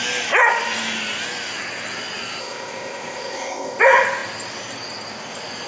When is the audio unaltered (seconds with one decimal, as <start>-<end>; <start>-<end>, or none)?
0.0-2.4; 3.8-5.7